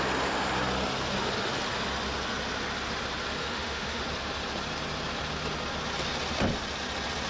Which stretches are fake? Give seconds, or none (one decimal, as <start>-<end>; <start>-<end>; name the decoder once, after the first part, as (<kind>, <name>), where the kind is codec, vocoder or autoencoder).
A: 3.4-4.0 (autoencoder, DAC-VAE)